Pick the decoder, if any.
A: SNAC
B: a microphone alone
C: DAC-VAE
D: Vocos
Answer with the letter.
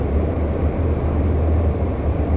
B